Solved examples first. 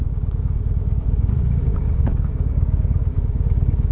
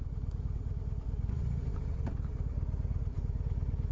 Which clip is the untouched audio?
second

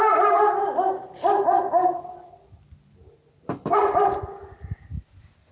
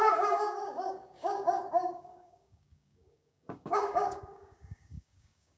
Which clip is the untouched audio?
first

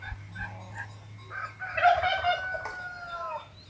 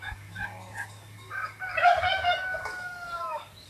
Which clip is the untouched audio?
first